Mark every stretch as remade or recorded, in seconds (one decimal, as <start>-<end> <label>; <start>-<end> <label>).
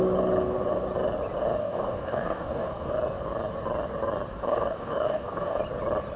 0.0-1.6 recorded; 1.6-2.9 remade; 2.9-4.3 recorded; 4.3-5.6 remade; 5.6-6.2 recorded